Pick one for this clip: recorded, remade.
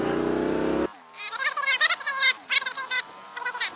recorded